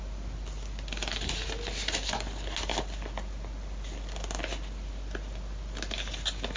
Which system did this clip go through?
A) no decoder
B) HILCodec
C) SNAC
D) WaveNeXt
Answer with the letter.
A